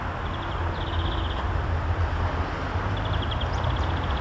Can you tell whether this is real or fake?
real